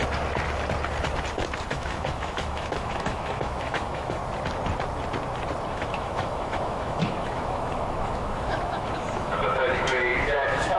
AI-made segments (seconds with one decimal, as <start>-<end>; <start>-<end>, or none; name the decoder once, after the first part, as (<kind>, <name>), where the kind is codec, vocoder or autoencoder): 1.7-4.2 (autoencoder, DAC-VAE); 5.7-10.8

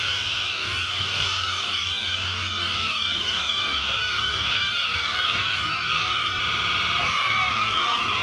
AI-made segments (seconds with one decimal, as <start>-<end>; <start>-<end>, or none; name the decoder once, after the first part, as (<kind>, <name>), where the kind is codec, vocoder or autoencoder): 0.0-6.4 (codec, DAC); 7.0-8.2

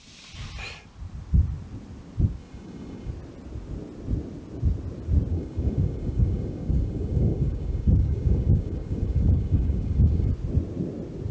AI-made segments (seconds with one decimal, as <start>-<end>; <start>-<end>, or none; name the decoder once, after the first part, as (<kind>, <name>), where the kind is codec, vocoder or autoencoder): 2.4-3.1 (codec, DAC); 5.3-10.3

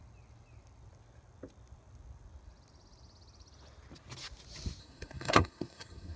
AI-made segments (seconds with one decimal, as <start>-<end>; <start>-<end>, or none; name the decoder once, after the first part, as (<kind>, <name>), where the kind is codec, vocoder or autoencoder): 4.8-6.2 (codec, SNAC)

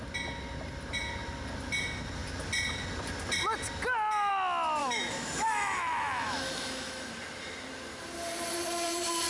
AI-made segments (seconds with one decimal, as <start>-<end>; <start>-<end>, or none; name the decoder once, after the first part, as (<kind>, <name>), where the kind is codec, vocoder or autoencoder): 4.8-7.1 (autoencoder, DAC-VAE)